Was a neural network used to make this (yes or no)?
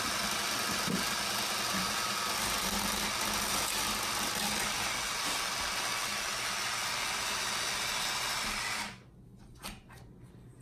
no